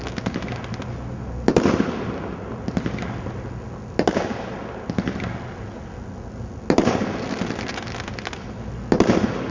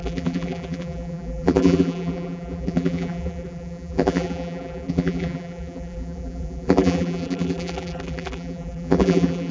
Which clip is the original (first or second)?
first